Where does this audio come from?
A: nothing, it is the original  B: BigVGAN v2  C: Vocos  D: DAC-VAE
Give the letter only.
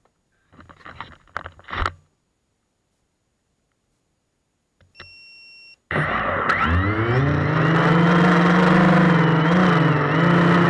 A